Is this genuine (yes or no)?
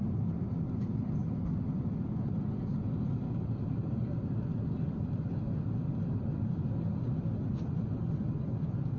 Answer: yes